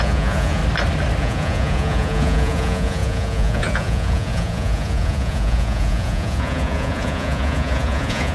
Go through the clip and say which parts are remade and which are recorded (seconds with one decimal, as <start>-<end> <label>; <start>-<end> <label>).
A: 0.0-0.6 remade; 0.6-1.2 recorded; 1.2-8.3 remade

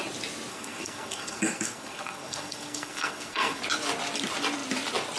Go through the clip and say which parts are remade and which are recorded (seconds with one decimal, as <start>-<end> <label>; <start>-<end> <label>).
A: 0.0-0.5 recorded; 0.5-3.6 remade; 3.6-5.2 recorded

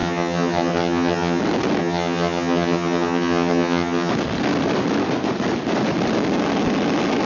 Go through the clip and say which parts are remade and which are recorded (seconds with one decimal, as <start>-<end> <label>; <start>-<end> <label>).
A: 0.0-1.4 remade; 1.4-1.8 recorded; 1.8-4.1 remade; 4.1-7.3 recorded

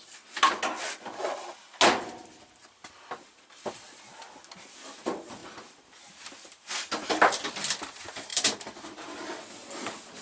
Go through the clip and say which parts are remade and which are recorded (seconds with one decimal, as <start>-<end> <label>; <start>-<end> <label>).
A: 0.0-10.2 recorded